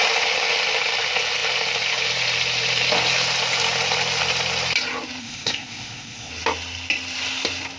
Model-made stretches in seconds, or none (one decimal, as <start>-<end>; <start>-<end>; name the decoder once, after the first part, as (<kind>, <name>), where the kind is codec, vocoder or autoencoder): 5.2-6.3 (codec, ZipCodec)